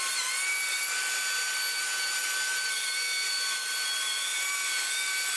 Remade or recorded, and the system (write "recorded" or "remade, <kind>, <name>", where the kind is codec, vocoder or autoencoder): recorded